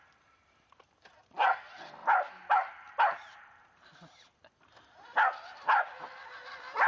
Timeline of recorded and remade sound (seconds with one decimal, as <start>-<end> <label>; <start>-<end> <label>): 0.0-2.0 recorded; 2.0-4.5 remade; 4.5-6.9 recorded